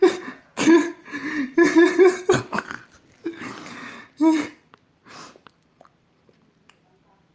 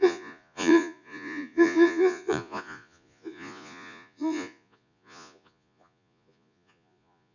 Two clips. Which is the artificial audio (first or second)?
second